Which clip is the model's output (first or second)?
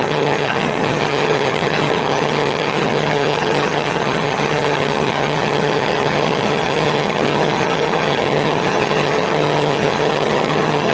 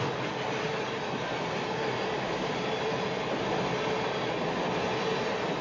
first